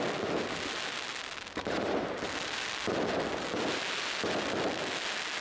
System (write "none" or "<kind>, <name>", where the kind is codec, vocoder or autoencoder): none